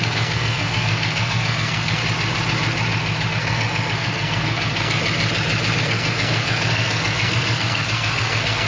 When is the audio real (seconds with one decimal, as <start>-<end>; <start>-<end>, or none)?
2.0-3.3; 5.0-5.8